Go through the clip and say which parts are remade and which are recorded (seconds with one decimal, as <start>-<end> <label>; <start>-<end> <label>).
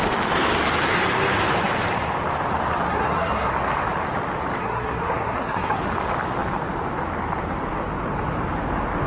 0.0-2.9 recorded; 2.9-3.5 remade; 3.5-4.6 recorded; 4.6-5.8 remade; 5.8-9.1 recorded